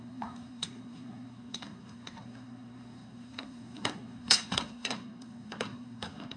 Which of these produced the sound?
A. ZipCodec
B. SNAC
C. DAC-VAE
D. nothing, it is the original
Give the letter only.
B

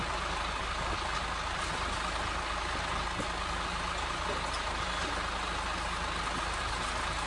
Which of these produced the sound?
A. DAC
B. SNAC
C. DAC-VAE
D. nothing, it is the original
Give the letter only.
D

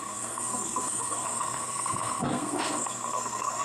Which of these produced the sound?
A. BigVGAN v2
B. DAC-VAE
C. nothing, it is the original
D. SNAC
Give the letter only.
D